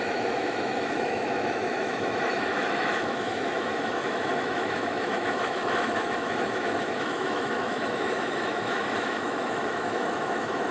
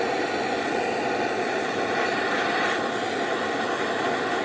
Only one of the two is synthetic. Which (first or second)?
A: first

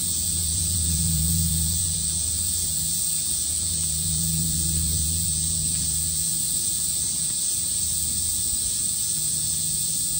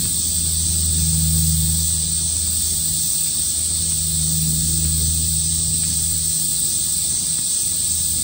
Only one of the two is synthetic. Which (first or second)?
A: first